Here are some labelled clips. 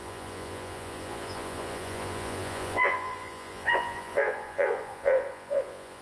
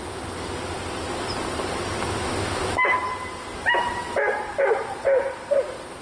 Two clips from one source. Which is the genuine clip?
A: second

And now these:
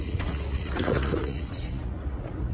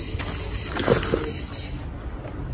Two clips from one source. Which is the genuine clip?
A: second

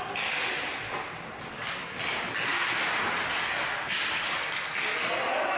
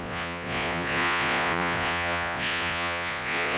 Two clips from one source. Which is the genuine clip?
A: first